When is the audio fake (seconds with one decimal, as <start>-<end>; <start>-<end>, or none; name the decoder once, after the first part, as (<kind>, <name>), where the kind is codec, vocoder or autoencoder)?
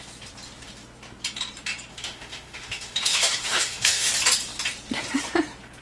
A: 1.9-4.1 (autoencoder, DAC-VAE)